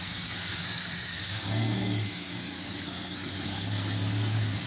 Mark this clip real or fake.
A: fake